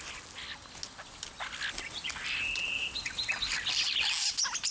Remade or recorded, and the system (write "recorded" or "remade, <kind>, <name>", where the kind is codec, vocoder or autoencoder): recorded